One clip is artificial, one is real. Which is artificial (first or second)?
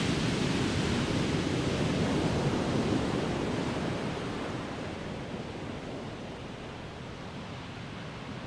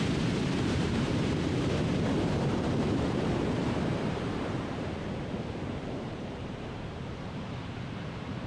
second